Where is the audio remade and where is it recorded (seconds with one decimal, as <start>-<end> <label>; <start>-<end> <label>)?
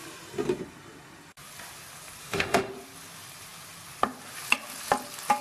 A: 0.0-2.2 recorded; 2.2-2.7 remade; 2.7-5.4 recorded